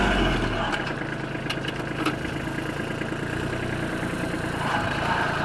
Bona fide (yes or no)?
yes